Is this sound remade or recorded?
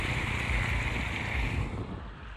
recorded